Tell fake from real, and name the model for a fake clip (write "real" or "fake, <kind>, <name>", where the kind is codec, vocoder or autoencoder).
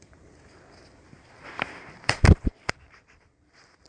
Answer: fake, vocoder, BigVGAN v2